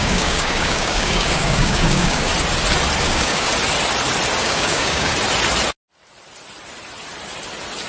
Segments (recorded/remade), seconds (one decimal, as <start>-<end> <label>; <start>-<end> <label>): 0.0-2.3 remade; 2.3-3.0 recorded; 3.0-3.5 remade; 3.5-4.4 recorded; 4.4-5.1 remade; 5.1-7.9 recorded